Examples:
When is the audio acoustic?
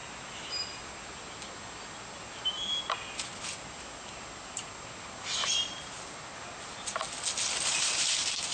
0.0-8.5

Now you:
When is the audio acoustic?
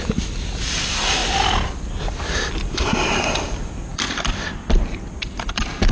1.2-2.0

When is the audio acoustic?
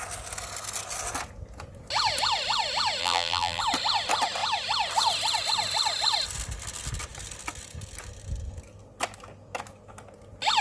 0.0-3.0; 3.6-10.6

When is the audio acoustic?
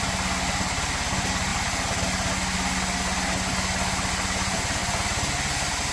0.0-5.9